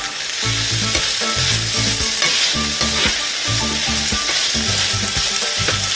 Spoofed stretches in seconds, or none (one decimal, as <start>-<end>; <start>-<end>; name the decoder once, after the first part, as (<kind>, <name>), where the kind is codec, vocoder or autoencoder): none